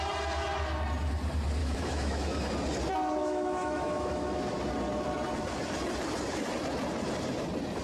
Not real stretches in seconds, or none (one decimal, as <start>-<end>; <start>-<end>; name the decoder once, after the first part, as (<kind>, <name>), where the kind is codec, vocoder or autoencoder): 1.6-2.5 (autoencoder, DAC-VAE); 3.2-4.4

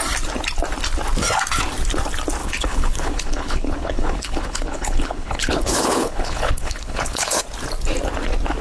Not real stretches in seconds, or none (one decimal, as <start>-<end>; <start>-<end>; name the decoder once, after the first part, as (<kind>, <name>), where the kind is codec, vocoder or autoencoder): 2.4-7.4 (codec, HILCodec)

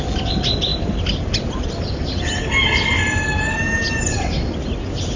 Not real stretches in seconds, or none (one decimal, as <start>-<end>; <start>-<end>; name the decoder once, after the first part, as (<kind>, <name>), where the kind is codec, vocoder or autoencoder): none

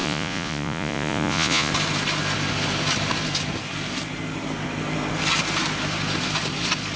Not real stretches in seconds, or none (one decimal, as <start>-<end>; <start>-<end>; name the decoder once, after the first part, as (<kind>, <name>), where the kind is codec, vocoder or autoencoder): 0.0-1.7 (vocoder, Vocos)

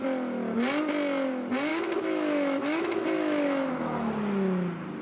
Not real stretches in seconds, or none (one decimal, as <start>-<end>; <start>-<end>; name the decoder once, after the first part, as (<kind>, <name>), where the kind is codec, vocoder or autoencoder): 1.7-3.7 (autoencoder, DAC-VAE)

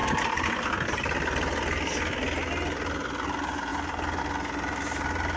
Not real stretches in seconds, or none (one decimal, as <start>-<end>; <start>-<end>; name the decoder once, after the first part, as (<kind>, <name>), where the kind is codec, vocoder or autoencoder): none

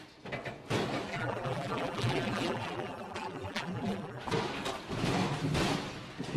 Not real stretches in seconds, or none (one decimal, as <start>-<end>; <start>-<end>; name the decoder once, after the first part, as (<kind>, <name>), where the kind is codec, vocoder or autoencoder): 1.1-4.2 (vocoder, BigVGAN v2)